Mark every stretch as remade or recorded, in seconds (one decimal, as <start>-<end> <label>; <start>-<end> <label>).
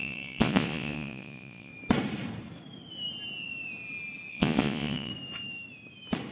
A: 0.0-1.7 remade; 1.7-4.3 recorded; 4.3-5.1 remade; 5.1-6.3 recorded